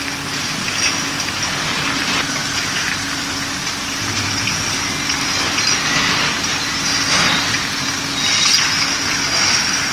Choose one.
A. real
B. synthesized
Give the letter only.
A